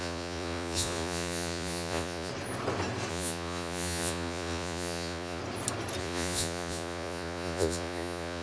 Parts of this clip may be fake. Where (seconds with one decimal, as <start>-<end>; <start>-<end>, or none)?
0.0-2.3; 3.1-5.4; 6.0-8.4